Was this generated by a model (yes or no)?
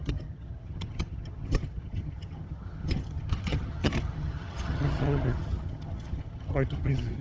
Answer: yes